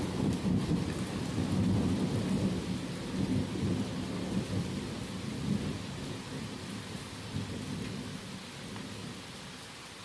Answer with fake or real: real